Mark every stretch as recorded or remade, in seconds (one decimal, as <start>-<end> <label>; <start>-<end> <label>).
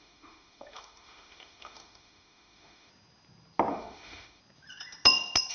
0.0-2.9 remade; 2.9-3.7 recorded; 3.7-4.4 remade; 4.4-5.5 recorded